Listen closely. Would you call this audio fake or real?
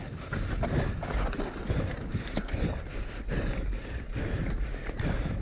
real